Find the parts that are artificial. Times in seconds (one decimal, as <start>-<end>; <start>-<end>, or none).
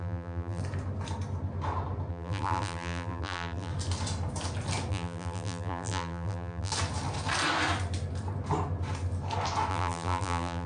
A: 0.0-0.6; 2.1-3.7; 4.9-6.7; 9.7-10.7